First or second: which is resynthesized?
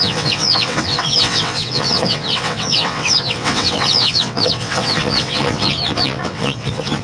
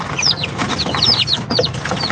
first